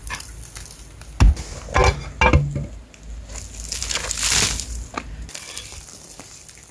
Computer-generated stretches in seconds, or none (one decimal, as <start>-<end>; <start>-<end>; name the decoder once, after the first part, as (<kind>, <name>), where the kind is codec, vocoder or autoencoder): none